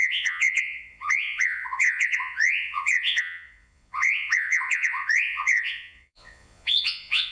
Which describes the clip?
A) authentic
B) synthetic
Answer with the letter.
B